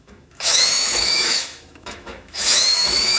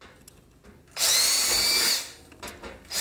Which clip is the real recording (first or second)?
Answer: second